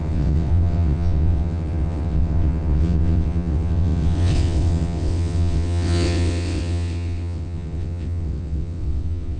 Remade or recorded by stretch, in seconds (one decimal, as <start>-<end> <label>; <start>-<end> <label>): 0.0-9.4 remade